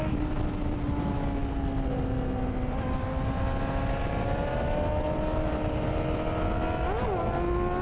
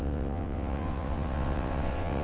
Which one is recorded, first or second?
first